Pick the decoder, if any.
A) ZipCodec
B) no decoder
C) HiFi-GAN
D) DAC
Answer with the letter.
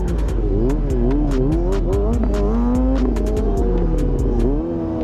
B